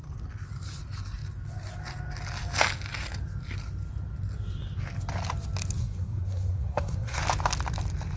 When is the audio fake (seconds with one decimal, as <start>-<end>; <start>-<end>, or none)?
5.8-7.2